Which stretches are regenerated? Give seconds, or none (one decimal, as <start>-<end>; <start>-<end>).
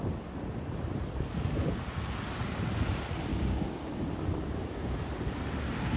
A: 3.3-4.0